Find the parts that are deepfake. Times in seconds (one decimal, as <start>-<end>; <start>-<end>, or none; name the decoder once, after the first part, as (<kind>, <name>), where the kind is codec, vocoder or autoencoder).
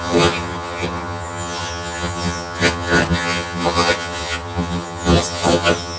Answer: 0.0-6.0 (vocoder, HiFi-GAN)